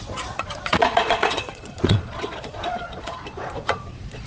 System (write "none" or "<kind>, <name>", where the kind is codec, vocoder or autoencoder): vocoder, Vocos